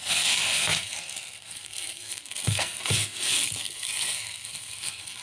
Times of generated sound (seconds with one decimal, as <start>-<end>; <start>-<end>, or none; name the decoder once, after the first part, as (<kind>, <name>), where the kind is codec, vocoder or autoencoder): 0.0-5.2 (codec, SNAC)